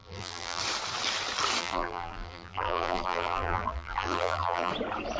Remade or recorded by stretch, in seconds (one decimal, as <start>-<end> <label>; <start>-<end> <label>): 0.0-0.6 remade; 0.6-1.6 recorded; 1.6-4.7 remade; 4.7-5.2 recorded